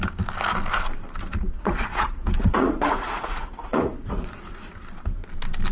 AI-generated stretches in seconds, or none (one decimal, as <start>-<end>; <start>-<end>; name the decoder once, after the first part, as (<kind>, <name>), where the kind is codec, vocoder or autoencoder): 1.3-4.7 (vocoder, Vocos)